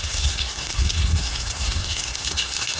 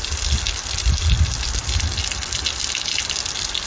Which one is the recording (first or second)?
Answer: second